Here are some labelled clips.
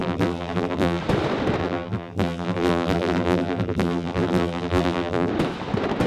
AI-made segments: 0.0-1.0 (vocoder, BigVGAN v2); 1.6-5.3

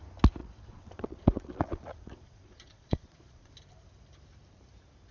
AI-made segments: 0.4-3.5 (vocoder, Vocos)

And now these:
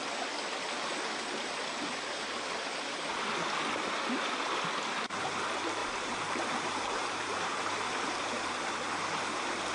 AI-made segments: 5.8-8.7 (vocoder, BigVGAN v2)